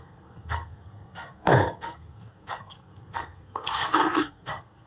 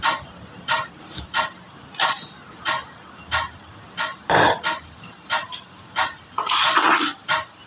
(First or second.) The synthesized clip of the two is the first